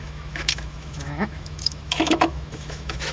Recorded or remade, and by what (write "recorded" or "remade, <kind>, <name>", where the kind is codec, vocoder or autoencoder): remade, autoencoder, DAC-VAE